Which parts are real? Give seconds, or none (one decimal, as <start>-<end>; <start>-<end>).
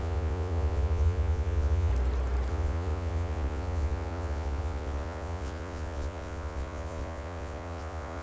1.9-2.5